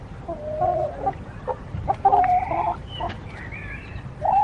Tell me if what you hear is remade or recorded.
recorded